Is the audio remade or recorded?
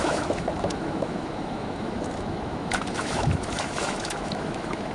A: remade